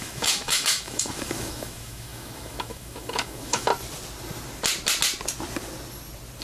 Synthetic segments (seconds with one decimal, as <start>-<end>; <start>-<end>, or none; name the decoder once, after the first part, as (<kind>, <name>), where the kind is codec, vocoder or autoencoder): 0.0-3.7 (autoencoder, DAC-VAE)